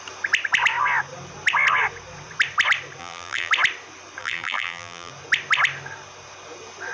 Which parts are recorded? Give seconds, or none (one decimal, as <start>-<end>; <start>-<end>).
0.0-3.0; 3.5-4.2; 5.1-6.9